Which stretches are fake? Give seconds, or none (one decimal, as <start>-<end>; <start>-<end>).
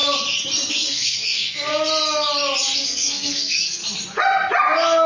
0.7-1.7; 2.8-3.8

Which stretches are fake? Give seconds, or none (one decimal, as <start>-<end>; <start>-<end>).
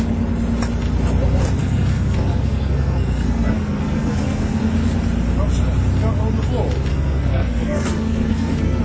1.6-4.6; 6.9-8.8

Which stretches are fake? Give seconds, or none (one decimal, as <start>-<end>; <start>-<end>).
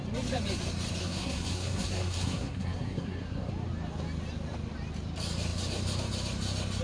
1.0-3.5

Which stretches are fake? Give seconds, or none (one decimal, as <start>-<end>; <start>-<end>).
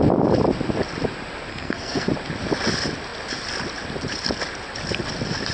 1.5-2.1